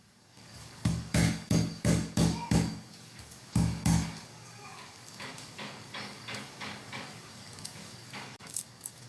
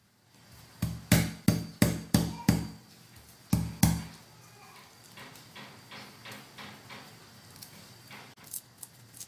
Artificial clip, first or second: first